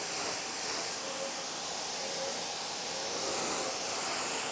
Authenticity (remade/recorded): recorded